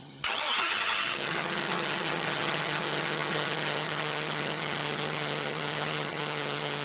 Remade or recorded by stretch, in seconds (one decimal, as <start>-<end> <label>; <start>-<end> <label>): 0.0-6.8 remade